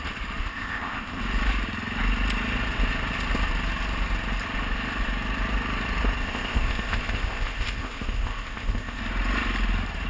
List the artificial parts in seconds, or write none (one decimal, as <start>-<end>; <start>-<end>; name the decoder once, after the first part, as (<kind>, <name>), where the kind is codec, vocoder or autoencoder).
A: 0.4-1.2 (codec, ZipCodec); 6.2-9.0